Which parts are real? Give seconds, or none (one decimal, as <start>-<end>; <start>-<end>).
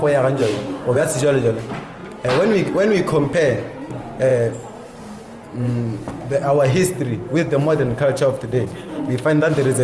0.0-0.4; 1.0-9.8